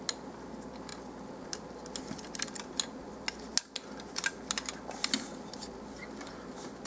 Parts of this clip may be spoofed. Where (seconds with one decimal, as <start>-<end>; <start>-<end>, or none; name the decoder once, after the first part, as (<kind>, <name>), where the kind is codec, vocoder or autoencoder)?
none